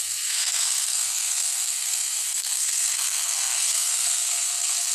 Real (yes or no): no